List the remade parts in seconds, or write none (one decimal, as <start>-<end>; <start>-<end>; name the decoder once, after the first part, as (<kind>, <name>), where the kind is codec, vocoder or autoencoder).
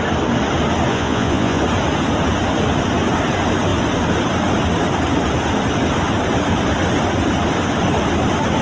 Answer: 0.9-1.6 (vocoder, Vocos)